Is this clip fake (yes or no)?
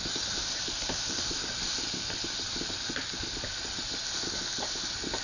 no